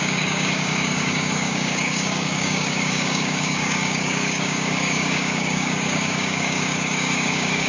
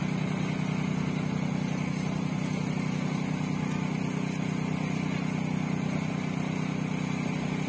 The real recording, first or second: second